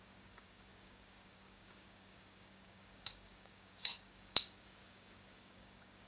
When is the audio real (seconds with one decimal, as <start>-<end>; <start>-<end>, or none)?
none